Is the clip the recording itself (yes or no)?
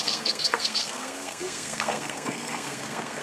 no